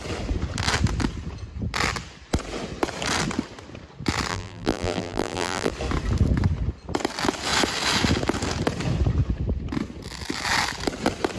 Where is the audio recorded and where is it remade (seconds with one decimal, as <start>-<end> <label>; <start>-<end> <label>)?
0.0-4.3 recorded; 4.3-5.7 remade; 5.7-11.4 recorded